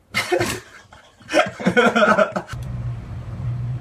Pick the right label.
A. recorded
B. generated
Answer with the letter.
B